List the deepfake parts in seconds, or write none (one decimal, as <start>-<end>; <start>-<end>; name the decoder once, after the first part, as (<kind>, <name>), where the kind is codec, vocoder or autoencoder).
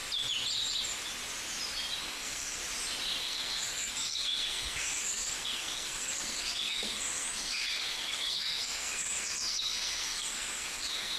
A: 2.0-2.6 (codec, SNAC); 3.2-11.2